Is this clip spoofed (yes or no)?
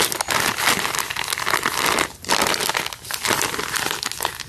no